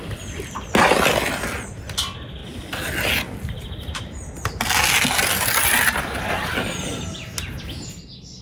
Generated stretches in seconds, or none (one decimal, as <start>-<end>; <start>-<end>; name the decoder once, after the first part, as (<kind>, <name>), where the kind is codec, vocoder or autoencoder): none